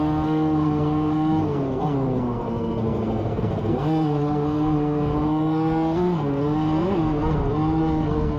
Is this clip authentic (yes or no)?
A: no